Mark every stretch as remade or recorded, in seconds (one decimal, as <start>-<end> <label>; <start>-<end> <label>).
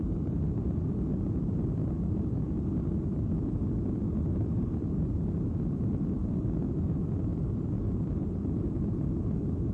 0.0-6.2 remade; 6.2-6.8 recorded; 6.8-9.7 remade